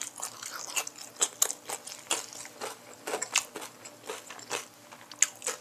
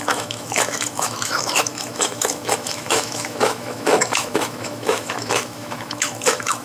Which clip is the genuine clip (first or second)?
first